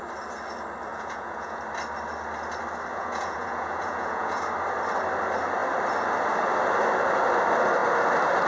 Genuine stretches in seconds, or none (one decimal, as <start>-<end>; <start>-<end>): 0.0-0.9; 1.6-2.9; 4.4-8.5